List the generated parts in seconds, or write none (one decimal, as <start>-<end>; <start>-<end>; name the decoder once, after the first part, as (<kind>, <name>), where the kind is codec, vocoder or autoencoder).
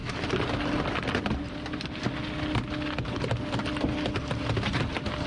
none